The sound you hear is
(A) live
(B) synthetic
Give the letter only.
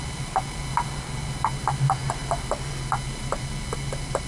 A